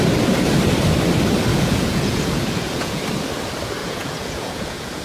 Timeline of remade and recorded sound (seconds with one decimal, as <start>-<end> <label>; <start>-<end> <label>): 0.0-1.5 recorded; 1.5-3.0 remade; 3.0-3.8 recorded; 3.8-5.0 remade